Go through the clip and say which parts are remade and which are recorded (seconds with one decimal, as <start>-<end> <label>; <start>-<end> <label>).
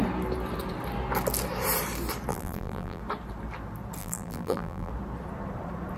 0.0-2.3 recorded; 2.3-3.0 remade; 3.0-4.0 recorded; 4.0-4.9 remade; 4.9-6.0 recorded